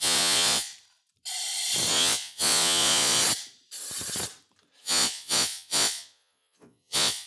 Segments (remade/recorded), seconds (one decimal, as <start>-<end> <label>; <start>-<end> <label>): 0.0-0.7 remade; 0.7-1.9 recorded; 1.9-3.2 remade; 3.2-4.8 recorded; 4.8-7.3 remade

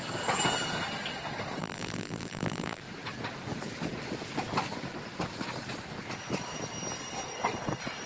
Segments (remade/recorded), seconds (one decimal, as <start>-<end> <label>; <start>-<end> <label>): 0.0-1.6 recorded; 1.6-2.8 remade; 2.8-8.1 recorded

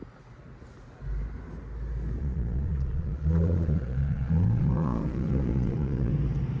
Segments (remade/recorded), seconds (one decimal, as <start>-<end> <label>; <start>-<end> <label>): 0.0-2.2 recorded; 2.2-6.1 remade; 6.1-6.6 recorded

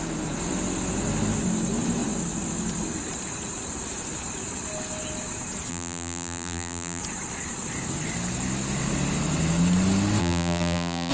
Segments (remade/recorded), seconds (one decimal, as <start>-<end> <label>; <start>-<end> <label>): 0.0-5.7 recorded; 5.7-7.0 remade; 7.0-10.2 recorded; 10.2-11.1 remade

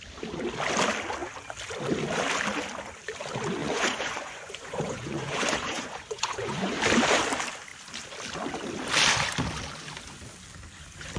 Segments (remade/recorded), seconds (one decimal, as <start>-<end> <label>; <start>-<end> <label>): 0.0-3.6 recorded; 3.6-6.8 remade; 6.8-11.2 recorded

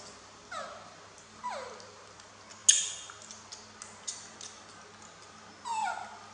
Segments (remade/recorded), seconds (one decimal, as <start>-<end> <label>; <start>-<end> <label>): 0.0-6.3 recorded

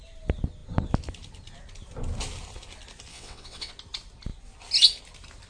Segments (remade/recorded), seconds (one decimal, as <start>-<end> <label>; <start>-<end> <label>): 0.0-3.1 recorded; 3.1-3.7 remade; 3.7-5.5 recorded